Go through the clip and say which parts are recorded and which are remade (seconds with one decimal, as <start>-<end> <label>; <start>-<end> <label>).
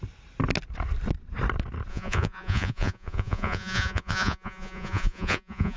0.0-1.9 recorded; 1.9-5.8 remade